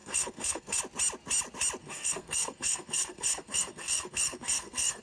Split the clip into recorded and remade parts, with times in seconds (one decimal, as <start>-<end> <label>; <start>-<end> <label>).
0.0-0.8 remade; 0.8-1.8 recorded; 1.8-5.0 remade